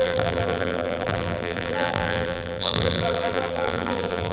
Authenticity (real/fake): fake